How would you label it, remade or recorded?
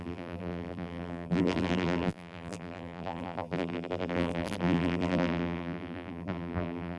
remade